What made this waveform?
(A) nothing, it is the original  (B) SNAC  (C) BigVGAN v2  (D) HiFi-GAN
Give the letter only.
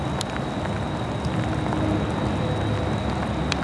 A